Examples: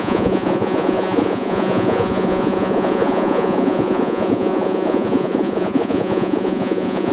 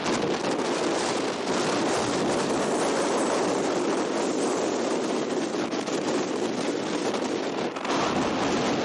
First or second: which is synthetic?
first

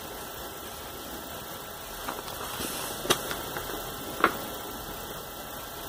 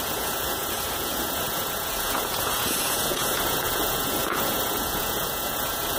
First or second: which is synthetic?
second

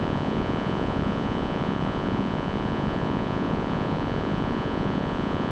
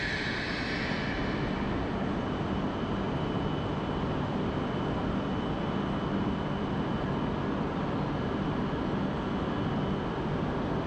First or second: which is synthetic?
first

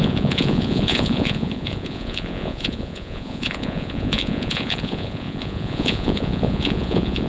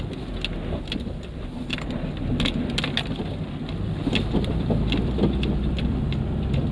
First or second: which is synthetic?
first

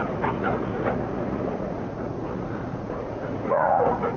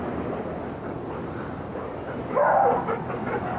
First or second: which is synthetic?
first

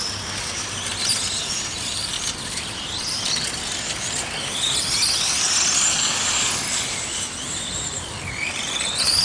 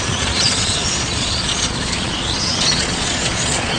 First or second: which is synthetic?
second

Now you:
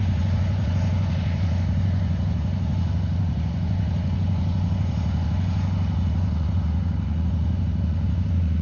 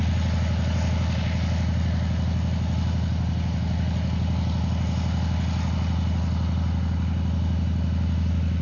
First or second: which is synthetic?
first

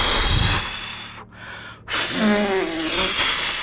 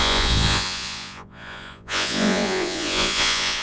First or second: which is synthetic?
second